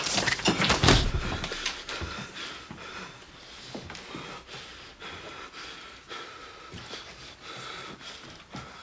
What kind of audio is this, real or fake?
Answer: real